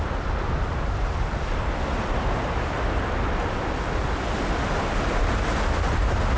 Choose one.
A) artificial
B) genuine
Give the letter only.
B